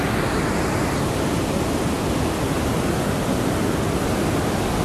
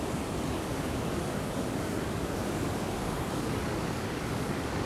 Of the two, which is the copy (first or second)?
second